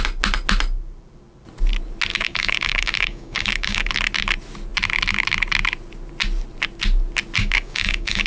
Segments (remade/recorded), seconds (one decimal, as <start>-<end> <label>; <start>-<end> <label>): 0.0-2.1 recorded; 2.1-3.9 remade; 3.9-7.4 recorded; 7.4-8.3 remade